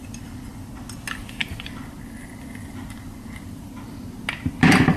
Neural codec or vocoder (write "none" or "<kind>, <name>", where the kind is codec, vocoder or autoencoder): none